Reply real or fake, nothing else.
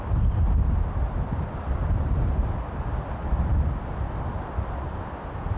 real